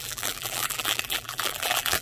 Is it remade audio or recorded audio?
remade